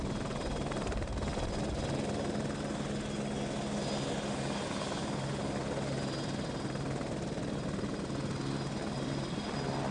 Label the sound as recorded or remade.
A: recorded